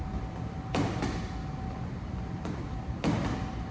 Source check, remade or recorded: remade